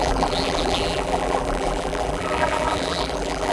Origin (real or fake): fake